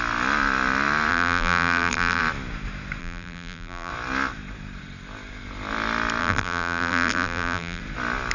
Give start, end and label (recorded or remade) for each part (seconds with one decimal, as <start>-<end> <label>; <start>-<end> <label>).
0.0-1.1 recorded; 1.1-2.2 remade; 2.2-3.0 recorded; 3.0-3.9 remade; 3.9-6.2 recorded; 6.2-7.8 remade; 7.8-8.3 recorded